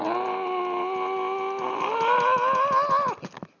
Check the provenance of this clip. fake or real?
real